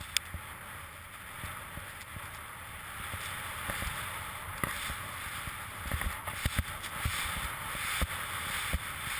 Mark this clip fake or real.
real